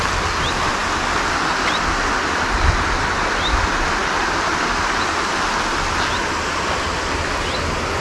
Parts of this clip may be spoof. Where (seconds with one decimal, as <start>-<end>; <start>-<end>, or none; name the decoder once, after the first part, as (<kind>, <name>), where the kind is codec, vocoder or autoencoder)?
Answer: none